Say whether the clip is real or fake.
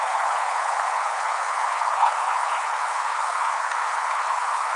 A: fake